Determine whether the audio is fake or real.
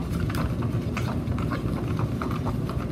real